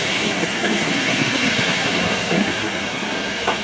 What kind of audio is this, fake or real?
fake